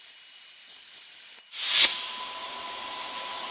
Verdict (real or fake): real